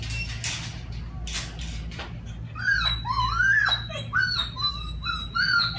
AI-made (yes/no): no